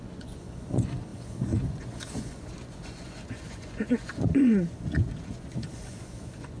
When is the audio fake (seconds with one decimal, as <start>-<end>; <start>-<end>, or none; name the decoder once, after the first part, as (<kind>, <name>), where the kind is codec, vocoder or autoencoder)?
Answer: 0.0-6.6 (vocoder, Vocos)

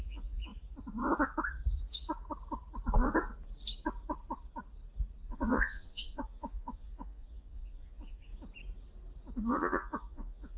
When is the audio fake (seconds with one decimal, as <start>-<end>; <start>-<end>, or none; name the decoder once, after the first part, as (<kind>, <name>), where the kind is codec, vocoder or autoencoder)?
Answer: 0.0-0.5 (vocoder, Vocos); 5.3-8.3; 9.5-10.6

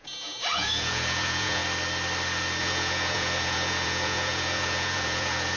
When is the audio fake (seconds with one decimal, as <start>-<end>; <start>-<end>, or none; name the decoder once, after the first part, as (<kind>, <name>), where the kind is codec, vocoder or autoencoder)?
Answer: 0.0-1.6 (vocoder, Vocos); 2.6-5.6

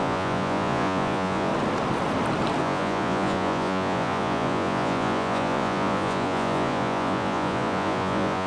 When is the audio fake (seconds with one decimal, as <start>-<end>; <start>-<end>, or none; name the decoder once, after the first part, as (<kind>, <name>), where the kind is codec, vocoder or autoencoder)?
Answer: 0.0-1.5 (vocoder, Vocos); 2.6-8.5